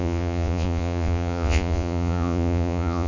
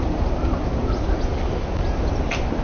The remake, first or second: first